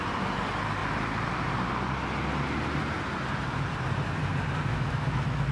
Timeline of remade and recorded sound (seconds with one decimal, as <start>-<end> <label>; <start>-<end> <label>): 0.0-4.7 recorded; 4.7-5.5 remade